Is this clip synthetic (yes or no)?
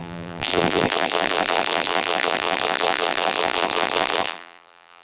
yes